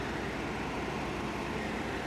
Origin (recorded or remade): recorded